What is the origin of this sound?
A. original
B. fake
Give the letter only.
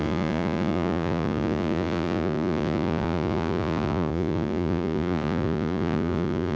B